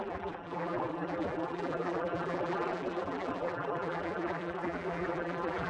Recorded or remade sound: remade